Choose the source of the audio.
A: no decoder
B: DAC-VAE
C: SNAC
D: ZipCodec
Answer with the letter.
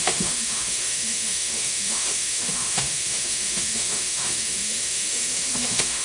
B